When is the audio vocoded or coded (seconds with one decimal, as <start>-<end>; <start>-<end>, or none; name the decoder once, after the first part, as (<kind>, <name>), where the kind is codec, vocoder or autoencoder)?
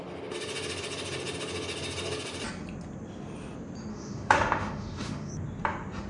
3.9-5.3 (autoencoder, DAC-VAE)